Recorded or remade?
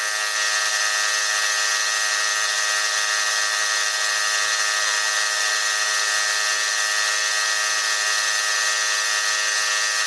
recorded